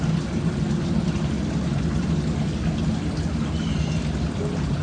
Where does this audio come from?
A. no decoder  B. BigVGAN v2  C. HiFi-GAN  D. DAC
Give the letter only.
A